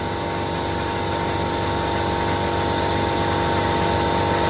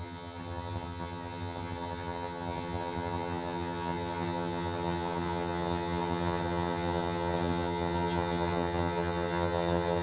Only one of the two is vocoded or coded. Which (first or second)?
second